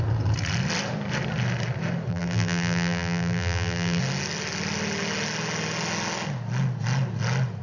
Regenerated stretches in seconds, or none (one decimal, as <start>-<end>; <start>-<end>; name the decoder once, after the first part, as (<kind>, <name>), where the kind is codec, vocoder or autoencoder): 2.1-4.0 (vocoder, BigVGAN v2)